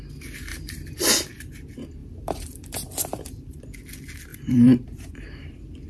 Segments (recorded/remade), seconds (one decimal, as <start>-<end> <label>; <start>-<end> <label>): 0.0-0.5 recorded; 0.5-1.1 remade; 1.1-2.0 recorded; 2.0-3.6 remade; 3.6-4.3 recorded; 4.3-5.1 remade; 5.1-5.9 recorded